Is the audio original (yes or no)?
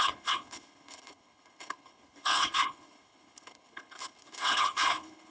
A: no